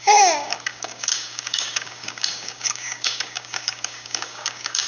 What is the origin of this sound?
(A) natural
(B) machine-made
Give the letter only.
B